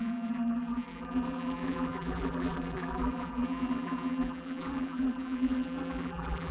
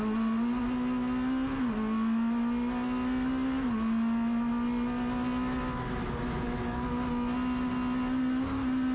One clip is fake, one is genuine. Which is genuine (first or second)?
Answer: second